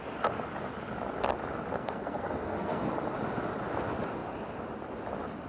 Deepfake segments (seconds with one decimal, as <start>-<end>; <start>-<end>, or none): 1.7-2.9

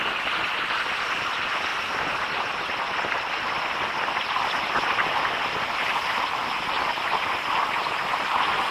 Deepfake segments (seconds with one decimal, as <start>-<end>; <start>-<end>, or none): 0.0-1.7; 2.6-8.7

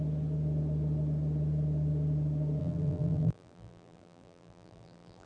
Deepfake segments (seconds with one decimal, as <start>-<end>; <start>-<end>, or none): 2.6-5.3